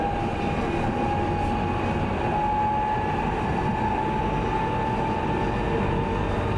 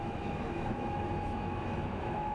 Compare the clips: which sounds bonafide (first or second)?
first